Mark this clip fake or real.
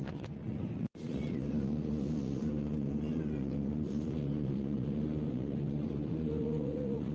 fake